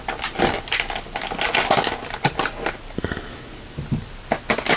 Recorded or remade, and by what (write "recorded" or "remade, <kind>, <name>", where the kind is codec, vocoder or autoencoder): recorded